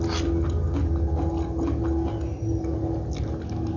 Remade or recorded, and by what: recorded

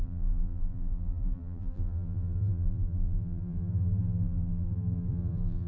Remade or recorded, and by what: remade, vocoder, BigVGAN v2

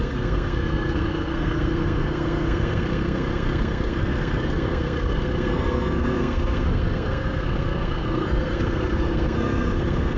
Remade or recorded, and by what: remade, codec, SNAC